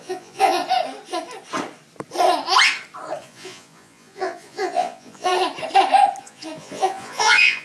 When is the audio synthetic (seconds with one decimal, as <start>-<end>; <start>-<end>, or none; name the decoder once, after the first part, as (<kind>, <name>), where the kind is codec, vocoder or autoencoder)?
0.0-0.6 (vocoder, Vocos); 3.2-5.3; 6.2-7.6